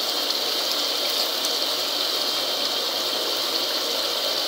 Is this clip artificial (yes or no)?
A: no